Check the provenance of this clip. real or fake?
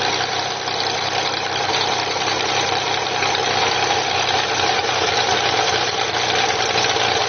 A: real